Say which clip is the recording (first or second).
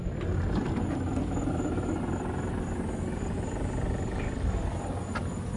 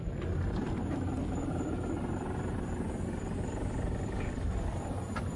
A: first